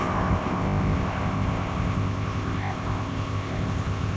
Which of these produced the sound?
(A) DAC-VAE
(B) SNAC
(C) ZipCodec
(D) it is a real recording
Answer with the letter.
C